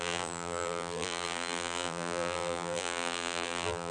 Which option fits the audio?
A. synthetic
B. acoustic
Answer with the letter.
A